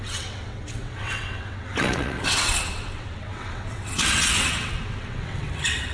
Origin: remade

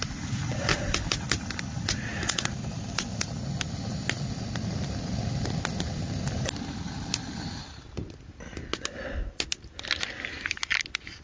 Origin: recorded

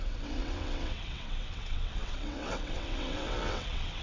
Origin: remade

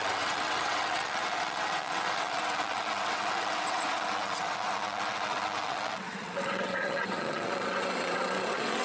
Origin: remade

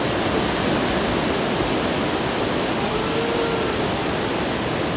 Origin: recorded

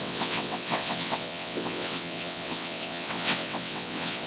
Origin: remade